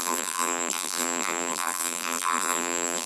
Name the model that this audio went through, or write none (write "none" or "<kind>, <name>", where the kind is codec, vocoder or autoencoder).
vocoder, BigVGAN v2